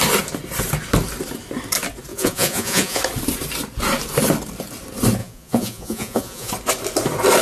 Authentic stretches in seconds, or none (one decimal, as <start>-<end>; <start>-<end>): 0.0-2.1; 3.0-5.2; 6.5-7.4